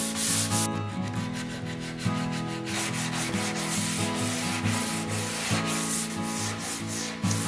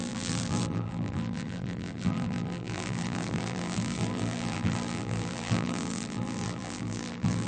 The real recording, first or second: first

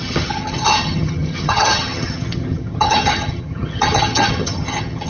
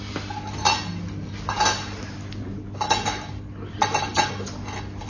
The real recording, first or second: second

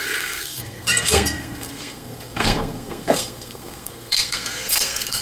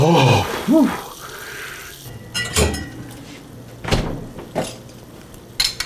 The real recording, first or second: second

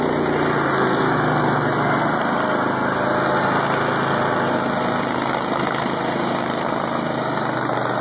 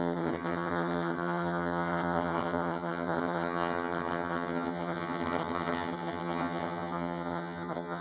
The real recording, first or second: first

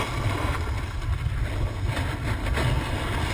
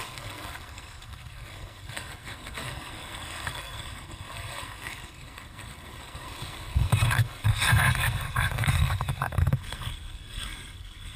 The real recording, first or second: first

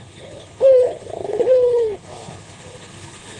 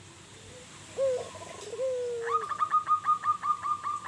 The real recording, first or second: second